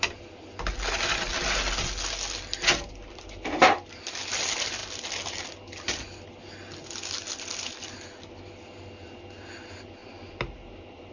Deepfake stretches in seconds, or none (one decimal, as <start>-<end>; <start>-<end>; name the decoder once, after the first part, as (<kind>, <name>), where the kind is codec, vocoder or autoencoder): 10.0-11.1 (vocoder, BigVGAN v2)